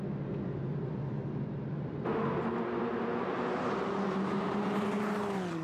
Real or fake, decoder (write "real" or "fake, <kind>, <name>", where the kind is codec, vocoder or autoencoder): real